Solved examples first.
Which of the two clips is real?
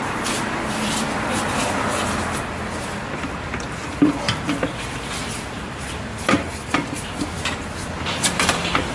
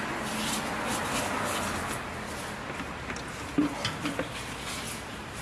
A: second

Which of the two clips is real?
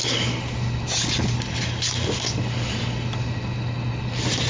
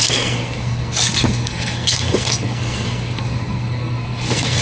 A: first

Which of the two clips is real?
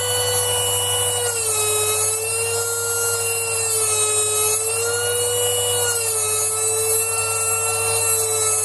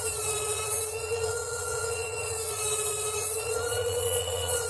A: first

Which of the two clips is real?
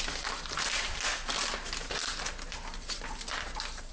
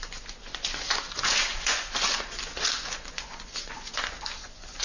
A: first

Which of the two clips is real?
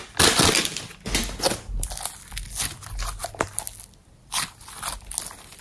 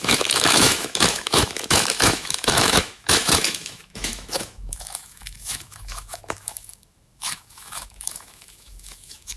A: first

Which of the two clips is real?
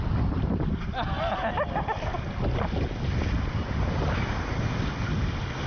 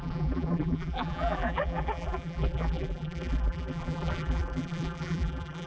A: first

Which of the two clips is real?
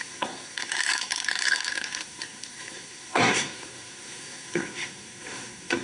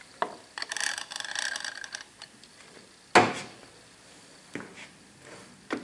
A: second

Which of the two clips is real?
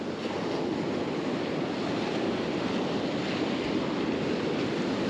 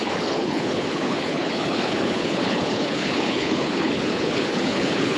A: first